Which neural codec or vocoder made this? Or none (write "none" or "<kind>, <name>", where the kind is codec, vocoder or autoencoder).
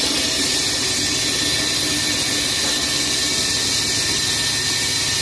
none